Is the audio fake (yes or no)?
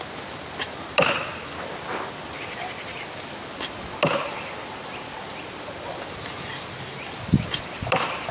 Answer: yes